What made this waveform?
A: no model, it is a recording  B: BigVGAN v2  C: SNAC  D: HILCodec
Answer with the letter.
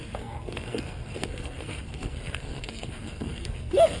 C